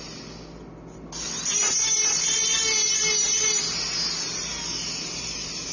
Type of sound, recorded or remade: recorded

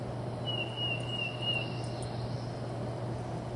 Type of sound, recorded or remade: recorded